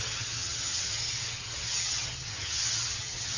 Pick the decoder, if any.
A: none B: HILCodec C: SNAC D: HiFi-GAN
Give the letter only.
D